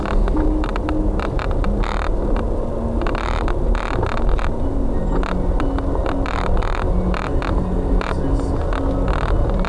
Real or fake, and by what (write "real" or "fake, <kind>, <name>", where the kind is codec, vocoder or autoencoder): real